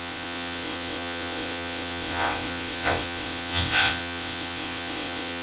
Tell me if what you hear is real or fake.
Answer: fake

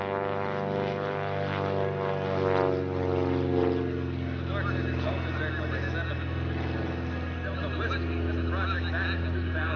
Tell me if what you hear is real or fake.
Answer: real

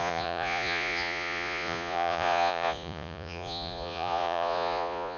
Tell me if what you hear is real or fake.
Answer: fake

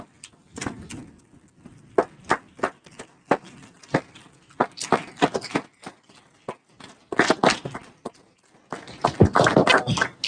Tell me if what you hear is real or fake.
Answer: real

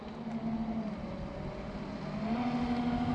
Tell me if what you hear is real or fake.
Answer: real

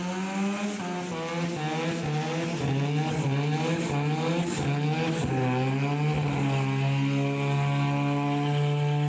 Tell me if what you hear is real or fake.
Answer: real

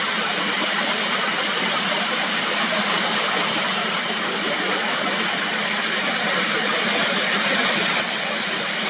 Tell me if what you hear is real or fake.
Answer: real